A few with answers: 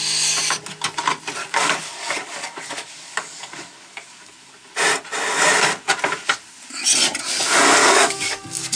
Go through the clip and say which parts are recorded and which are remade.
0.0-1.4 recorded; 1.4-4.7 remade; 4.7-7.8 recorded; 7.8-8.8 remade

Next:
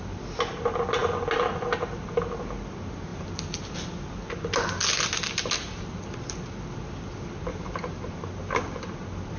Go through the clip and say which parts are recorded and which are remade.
0.0-9.4 recorded

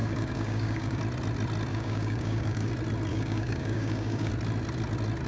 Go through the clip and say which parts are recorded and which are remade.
0.0-1.0 remade; 1.0-1.7 recorded; 1.7-2.7 remade; 2.7-3.1 recorded; 3.1-4.3 remade; 4.3-5.3 recorded

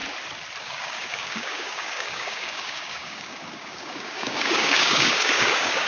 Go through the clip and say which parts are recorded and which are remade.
0.0-0.6 recorded; 0.6-5.9 remade

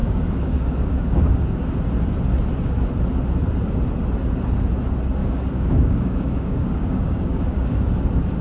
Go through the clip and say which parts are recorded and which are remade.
0.0-1.7 remade; 1.7-5.2 recorded; 5.2-8.0 remade; 8.0-8.4 recorded